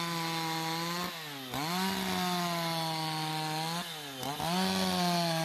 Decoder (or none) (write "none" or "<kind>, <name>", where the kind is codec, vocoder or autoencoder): none